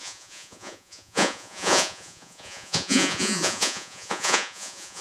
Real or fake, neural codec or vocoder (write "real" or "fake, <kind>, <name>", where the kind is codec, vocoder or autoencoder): fake, vocoder, Vocos